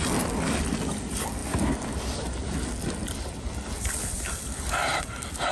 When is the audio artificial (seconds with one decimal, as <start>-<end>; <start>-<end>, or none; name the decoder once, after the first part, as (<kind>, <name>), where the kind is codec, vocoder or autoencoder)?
none